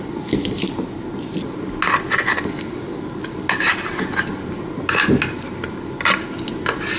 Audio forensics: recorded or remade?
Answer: recorded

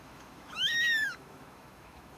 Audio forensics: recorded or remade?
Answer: remade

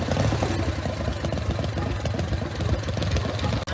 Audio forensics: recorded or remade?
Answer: recorded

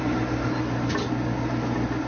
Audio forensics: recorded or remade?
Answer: recorded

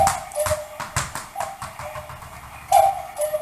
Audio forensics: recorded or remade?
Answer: recorded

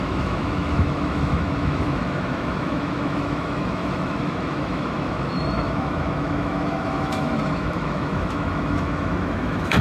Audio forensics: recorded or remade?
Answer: remade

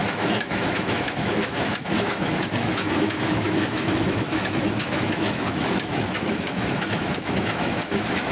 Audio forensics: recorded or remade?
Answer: remade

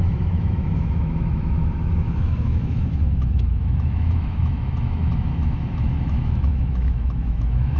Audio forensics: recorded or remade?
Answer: remade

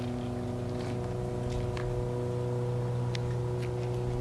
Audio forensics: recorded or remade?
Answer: recorded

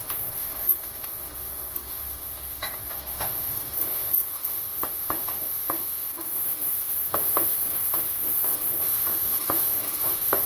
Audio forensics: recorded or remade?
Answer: remade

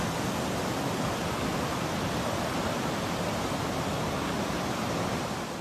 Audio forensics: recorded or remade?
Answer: recorded